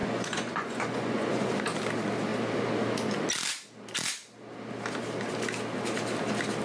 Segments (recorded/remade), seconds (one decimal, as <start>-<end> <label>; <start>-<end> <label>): 0.0-1.5 remade; 1.5-6.6 recorded